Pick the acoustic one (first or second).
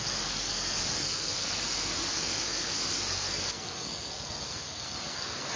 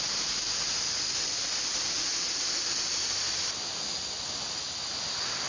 second